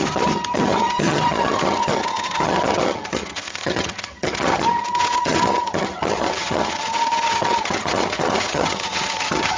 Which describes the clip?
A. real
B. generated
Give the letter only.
B